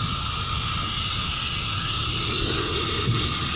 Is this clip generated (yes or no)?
no